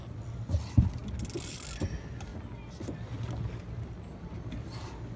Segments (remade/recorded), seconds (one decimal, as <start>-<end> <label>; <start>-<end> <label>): 0.0-5.2 recorded